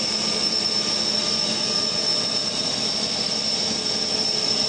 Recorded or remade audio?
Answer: recorded